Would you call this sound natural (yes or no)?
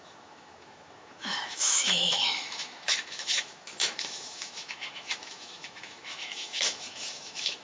no